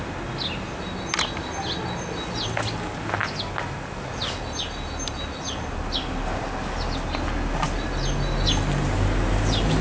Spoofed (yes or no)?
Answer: no